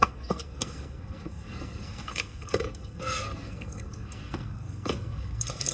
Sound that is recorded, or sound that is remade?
remade